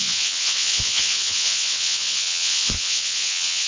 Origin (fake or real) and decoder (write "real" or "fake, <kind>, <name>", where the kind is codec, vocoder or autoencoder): fake, vocoder, WaveNeXt